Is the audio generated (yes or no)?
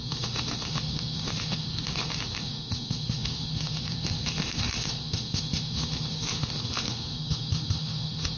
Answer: yes